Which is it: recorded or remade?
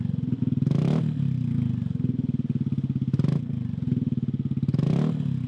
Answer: recorded